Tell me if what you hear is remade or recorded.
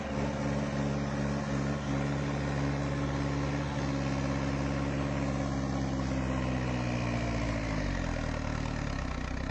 recorded